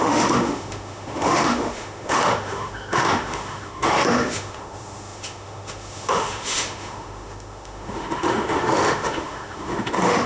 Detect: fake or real fake